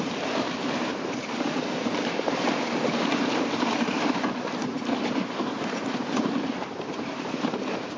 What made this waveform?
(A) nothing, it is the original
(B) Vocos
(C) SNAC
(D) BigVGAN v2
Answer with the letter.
D